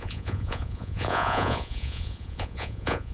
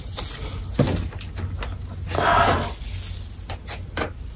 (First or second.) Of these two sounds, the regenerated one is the first